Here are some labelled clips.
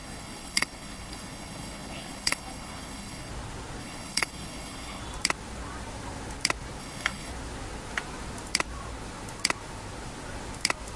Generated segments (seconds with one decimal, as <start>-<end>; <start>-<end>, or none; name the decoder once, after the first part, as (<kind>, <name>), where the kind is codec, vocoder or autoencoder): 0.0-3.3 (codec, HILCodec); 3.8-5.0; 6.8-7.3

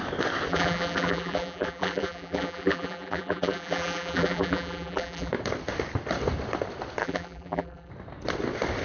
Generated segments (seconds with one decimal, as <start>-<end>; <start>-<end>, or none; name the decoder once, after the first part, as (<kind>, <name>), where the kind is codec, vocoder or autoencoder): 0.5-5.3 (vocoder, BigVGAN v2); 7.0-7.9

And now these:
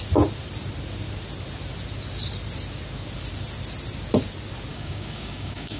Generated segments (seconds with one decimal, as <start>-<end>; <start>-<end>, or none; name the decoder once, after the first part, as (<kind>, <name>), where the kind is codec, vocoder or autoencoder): 4.7-5.8 (codec, DAC)

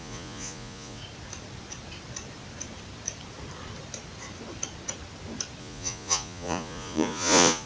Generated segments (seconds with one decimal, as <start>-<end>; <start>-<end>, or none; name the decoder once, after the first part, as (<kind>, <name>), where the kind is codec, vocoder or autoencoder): 0.0-1.0 (vocoder, Vocos); 5.6-7.7

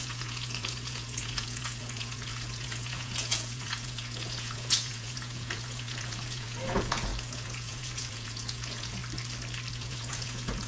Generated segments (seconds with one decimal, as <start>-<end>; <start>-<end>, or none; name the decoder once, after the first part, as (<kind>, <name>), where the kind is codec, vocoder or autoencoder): 0.0-9.0 (vocoder, Vocos); 9.7-10.7

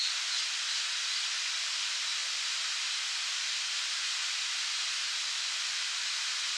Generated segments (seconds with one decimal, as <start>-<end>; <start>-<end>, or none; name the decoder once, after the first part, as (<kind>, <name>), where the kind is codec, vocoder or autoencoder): none